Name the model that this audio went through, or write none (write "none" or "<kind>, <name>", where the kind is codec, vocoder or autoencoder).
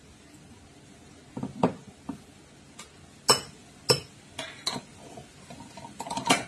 none